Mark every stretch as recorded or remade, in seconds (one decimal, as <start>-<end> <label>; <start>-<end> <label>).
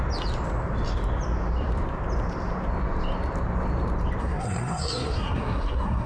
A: 0.0-4.2 recorded; 4.2-6.1 remade